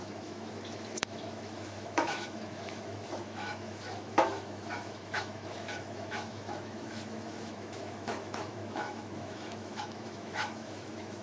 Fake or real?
fake